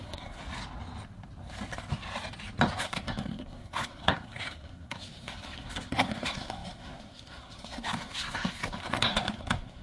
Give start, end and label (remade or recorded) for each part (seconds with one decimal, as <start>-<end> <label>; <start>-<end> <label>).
0.0-0.4 remade; 0.4-2.8 recorded; 2.8-9.8 remade